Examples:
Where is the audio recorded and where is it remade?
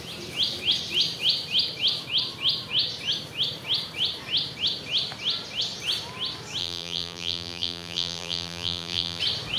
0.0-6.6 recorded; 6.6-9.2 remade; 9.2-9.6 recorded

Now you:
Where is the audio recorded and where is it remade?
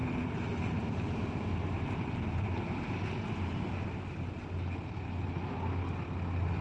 0.0-3.7 remade; 3.7-6.6 recorded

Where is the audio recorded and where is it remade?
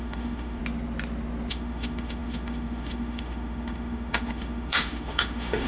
0.0-0.6 remade; 0.6-1.5 recorded; 1.5-5.7 remade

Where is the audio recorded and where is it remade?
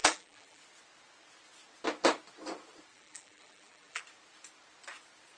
0.0-0.6 remade; 0.6-2.9 recorded; 2.9-4.0 remade; 4.0-5.4 recorded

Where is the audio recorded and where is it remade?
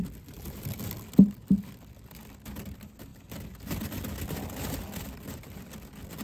0.0-6.2 recorded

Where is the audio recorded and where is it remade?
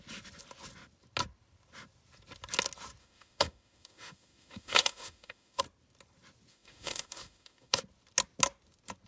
0.0-3.0 recorded; 3.0-5.6 remade; 5.6-6.5 recorded; 6.5-7.8 remade; 7.8-9.1 recorded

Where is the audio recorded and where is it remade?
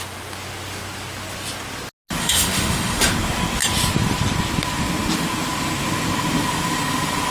0.0-2.2 recorded; 2.2-3.1 remade; 3.1-7.3 recorded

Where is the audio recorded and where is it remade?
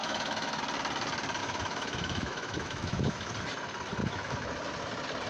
0.0-0.6 remade; 0.6-1.4 recorded; 1.4-3.3 remade; 3.3-4.0 recorded; 4.0-4.5 remade; 4.5-5.3 recorded